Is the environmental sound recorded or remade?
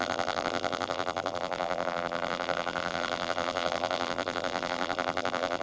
remade